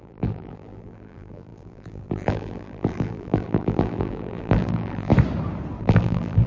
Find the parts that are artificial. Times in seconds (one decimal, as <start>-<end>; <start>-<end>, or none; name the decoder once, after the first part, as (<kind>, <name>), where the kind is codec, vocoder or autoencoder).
0.0-5.1 (vocoder, BigVGAN v2); 5.8-6.5